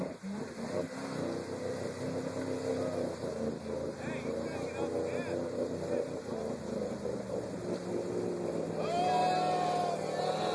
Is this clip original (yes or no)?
yes